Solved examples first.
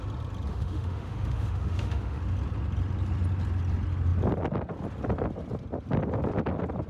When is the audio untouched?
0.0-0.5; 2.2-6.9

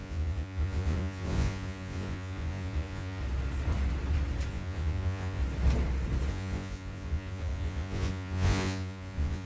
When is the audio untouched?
3.2-4.5; 5.4-6.3